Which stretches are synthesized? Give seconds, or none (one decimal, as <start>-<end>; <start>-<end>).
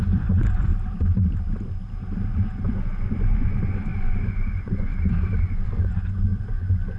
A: 0.0-0.7; 2.7-4.9; 5.4-7.0